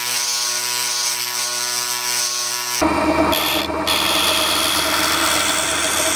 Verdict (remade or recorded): recorded